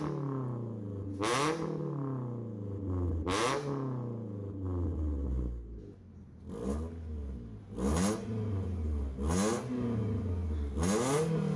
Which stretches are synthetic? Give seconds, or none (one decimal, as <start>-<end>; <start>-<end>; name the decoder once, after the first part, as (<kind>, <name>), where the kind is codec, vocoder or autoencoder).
none